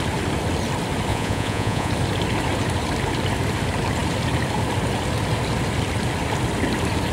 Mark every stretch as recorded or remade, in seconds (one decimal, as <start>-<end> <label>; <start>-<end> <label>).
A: 0.0-1.1 recorded; 1.1-1.9 remade; 1.9-7.1 recorded